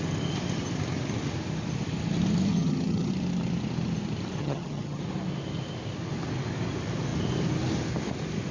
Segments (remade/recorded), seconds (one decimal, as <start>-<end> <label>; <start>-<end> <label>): 0.0-2.5 recorded; 2.5-3.1 remade; 3.1-4.4 recorded; 4.4-5.0 remade; 5.0-8.5 recorded